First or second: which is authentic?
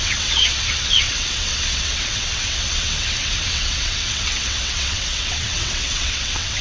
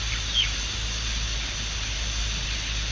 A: second